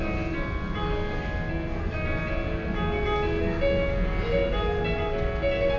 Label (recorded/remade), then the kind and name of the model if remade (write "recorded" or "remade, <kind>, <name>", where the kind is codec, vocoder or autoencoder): recorded